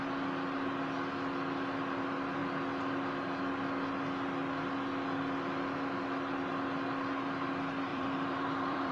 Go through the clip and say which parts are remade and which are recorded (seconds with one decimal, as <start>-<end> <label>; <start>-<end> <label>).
0.0-7.9 recorded; 7.9-8.9 remade